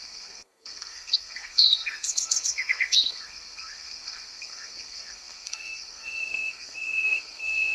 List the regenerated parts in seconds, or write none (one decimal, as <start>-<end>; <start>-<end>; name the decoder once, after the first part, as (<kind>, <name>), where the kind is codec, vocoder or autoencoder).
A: 0.0-7.7 (codec, SNAC)